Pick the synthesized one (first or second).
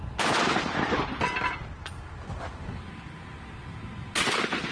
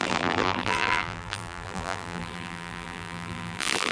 second